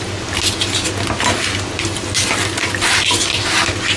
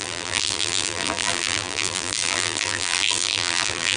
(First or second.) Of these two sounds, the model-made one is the second